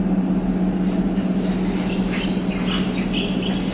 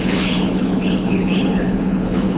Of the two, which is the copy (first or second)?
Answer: second